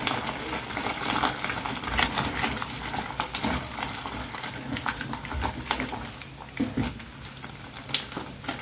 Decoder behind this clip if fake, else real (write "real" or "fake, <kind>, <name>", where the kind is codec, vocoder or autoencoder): real